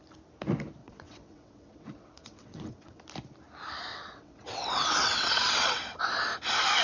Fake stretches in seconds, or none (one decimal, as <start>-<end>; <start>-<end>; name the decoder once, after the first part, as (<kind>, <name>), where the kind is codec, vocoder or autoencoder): 0.8-3.0 (vocoder, WaveNeXt); 3.9-6.0